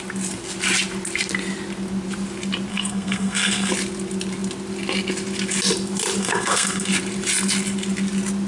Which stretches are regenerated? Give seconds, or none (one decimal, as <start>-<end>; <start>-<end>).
2.7-3.7; 6.2-6.9

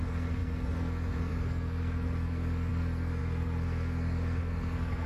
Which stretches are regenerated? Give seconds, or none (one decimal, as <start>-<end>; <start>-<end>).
0.0-5.1

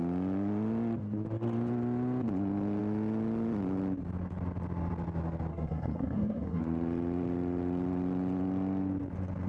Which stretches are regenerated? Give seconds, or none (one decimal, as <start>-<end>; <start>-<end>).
5.5-6.6

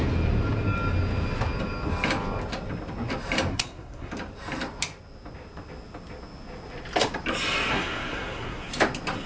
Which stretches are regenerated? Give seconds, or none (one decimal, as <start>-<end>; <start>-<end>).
3.5-4.1; 7.7-8.7

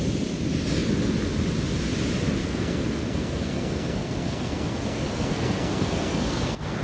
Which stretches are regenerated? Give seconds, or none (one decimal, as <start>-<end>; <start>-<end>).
2.4-6.8

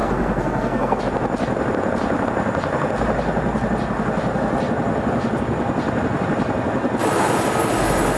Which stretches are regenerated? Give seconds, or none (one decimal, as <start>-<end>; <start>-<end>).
0.0-1.0